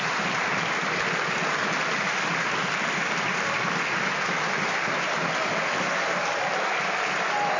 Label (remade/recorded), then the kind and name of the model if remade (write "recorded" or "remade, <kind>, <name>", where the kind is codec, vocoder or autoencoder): recorded